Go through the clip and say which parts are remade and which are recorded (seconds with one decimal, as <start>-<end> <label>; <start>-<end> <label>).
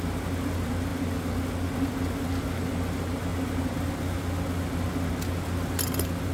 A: 0.0-6.3 recorded